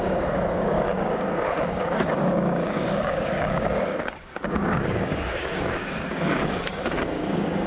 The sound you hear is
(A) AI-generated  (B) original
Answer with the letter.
A